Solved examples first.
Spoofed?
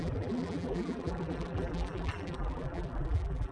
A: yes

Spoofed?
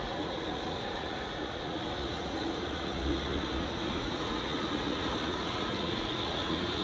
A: yes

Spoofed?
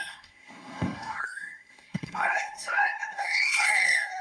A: yes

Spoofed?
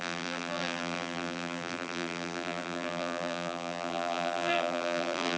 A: yes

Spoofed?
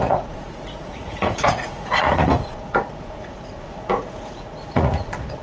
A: yes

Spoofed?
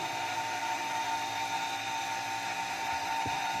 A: no